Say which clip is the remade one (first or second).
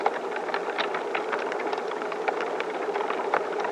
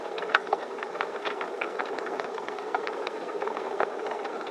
second